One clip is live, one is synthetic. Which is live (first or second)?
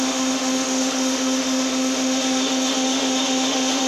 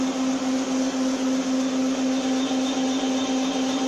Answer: second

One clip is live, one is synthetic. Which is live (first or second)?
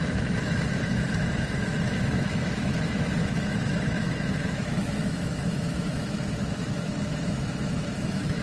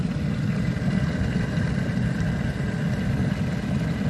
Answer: second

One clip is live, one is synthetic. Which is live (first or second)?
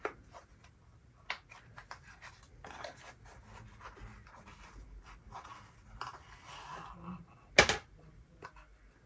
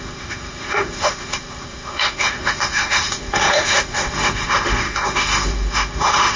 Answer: first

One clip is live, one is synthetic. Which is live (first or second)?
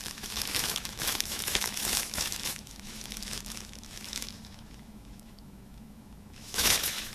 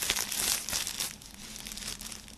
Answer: second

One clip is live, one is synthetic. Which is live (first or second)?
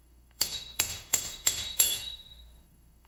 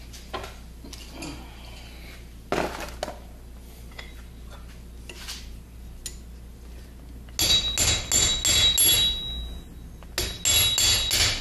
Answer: second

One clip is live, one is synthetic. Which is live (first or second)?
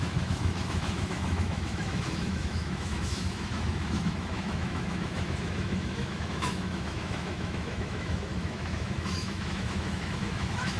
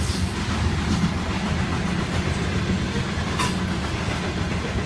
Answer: second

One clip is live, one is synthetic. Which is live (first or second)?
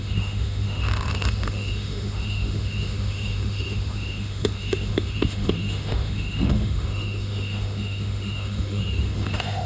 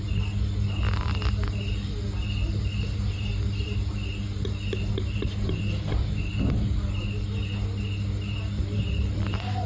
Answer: second